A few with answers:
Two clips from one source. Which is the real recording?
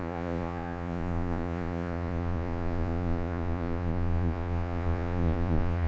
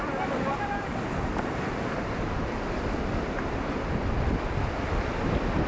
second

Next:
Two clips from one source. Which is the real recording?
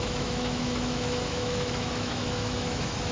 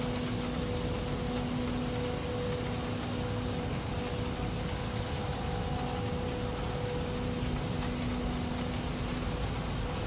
second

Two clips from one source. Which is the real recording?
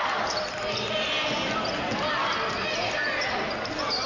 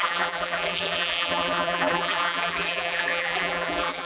first